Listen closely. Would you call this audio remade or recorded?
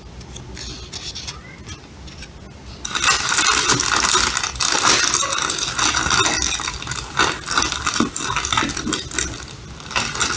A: recorded